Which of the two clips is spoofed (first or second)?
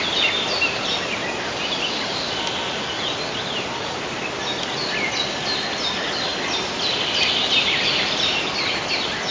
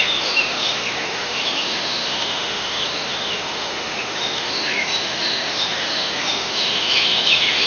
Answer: second